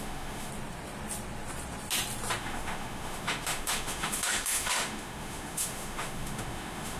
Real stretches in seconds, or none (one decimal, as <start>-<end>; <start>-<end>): 0.5-2.4

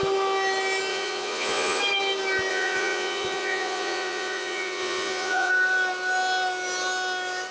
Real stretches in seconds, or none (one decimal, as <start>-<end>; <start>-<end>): 0.0-0.9; 1.8-2.5; 5.5-7.5

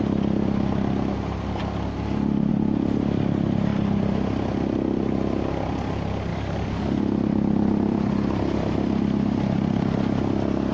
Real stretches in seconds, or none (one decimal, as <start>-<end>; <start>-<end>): 0.0-6.3; 7.0-10.7

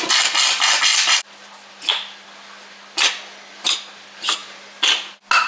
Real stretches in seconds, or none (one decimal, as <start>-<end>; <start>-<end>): 0.0-5.5

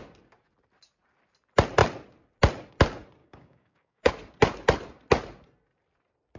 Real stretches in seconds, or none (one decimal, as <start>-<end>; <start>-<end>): 0.0-3.2; 4.1-6.4

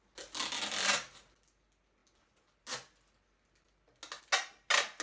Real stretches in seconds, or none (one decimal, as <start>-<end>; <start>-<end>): 0.0-5.0

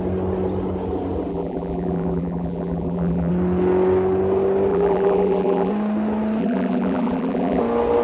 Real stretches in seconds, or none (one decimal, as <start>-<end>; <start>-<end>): 0.0-1.3; 3.3-4.7; 5.7-6.4; 7.6-8.0

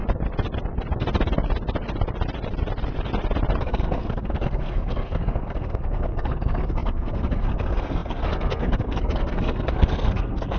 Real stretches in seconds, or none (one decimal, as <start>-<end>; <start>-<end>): 0.0-3.6